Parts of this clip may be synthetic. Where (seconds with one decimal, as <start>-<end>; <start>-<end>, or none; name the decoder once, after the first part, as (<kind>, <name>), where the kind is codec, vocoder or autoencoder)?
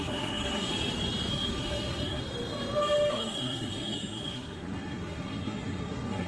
0.0-0.7 (codec, SNAC); 1.3-2.2; 3.1-6.3